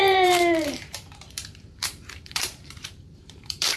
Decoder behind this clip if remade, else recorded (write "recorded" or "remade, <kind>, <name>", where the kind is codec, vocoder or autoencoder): remade, vocoder, BigVGAN v2